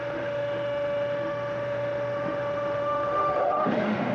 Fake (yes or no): yes